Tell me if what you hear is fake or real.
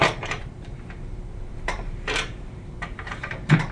fake